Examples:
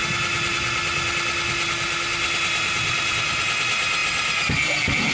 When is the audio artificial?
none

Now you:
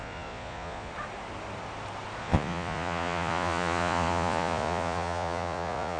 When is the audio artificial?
0.0-0.9; 2.2-6.0

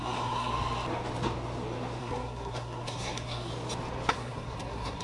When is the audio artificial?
0.0-0.5; 2.0-3.5; 4.1-5.0

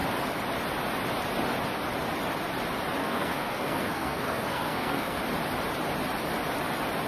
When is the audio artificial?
3.0-5.2

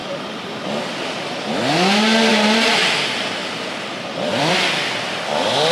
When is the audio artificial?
2.3-4.5

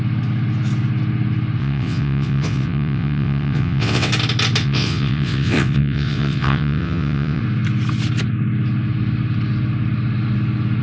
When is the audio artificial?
1.6-4.1; 4.6-7.4

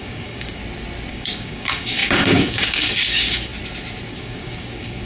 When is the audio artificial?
0.0-0.6; 1.1-3.5; 4.1-5.1